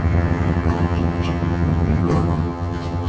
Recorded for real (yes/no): no